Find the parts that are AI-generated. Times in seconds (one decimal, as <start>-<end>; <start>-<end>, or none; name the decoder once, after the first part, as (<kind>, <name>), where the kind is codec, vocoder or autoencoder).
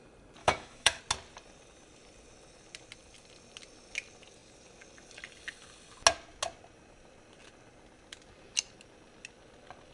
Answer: 0.4-1.0 (autoencoder, DAC-VAE)